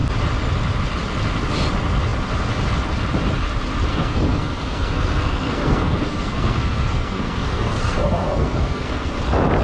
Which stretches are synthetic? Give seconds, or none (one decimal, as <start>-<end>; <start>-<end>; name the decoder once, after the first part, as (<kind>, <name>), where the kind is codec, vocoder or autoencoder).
3.9-9.1 (codec, SNAC)